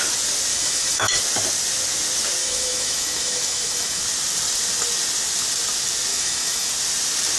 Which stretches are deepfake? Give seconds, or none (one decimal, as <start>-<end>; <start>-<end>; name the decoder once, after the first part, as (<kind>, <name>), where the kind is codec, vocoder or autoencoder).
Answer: 0.5-1.2 (autoencoder, DAC-VAE); 2.4-4.0; 6.1-6.7

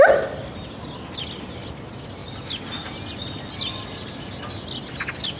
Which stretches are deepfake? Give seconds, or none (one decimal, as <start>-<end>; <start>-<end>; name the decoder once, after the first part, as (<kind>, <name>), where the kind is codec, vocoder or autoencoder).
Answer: none